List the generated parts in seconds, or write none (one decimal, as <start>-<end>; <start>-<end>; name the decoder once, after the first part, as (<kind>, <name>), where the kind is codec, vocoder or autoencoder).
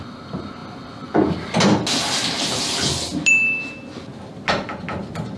none